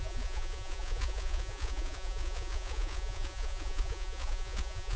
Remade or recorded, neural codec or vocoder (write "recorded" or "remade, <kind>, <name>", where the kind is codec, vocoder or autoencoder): remade, vocoder, Vocos